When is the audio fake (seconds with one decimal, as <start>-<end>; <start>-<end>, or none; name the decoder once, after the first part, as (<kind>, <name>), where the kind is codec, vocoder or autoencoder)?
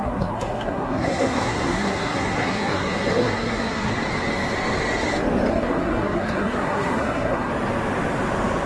0.0-3.9 (codec, SNAC); 5.5-7.5